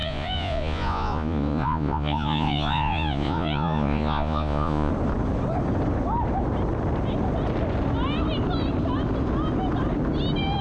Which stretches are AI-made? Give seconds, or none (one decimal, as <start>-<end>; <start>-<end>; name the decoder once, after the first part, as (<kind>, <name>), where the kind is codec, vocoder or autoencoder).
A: 0.0-4.9 (vocoder, Vocos)